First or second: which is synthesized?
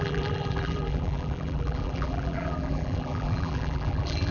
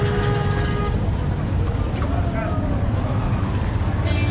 first